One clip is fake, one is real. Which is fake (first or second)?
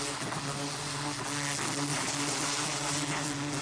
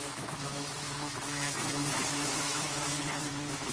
second